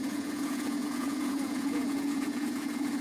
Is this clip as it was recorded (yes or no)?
no